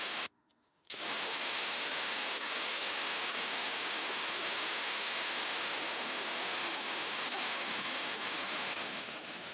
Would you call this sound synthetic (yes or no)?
yes